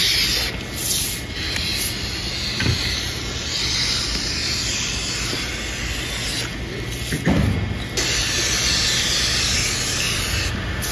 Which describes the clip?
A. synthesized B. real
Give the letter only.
B